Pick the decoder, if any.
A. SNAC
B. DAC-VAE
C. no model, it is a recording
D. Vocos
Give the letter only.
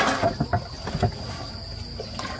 C